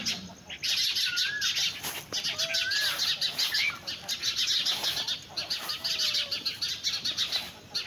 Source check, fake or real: real